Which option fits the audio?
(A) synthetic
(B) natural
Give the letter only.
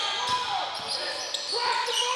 B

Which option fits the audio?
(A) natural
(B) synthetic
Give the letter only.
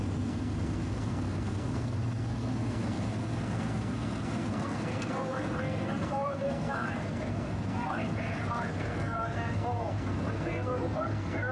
B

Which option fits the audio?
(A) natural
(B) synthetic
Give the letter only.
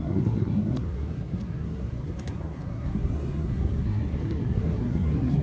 B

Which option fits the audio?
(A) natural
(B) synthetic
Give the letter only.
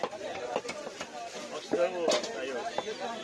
A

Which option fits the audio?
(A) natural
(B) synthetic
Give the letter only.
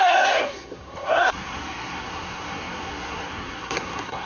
B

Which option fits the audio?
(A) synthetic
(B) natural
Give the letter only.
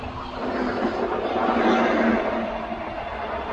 B